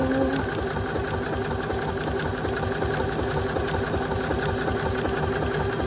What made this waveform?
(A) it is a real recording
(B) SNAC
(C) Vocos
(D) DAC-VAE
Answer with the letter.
A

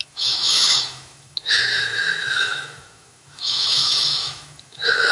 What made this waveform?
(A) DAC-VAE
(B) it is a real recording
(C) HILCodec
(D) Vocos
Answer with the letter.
A